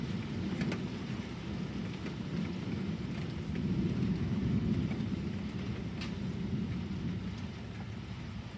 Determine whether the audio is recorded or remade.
recorded